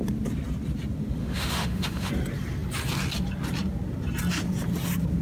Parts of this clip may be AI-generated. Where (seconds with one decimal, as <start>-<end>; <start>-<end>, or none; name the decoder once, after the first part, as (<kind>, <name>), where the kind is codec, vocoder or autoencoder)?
1.2-2.1 (autoencoder, DAC-VAE)